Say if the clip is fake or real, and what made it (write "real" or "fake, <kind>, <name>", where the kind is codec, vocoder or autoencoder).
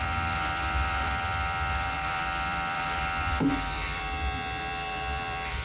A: fake, vocoder, BigVGAN v2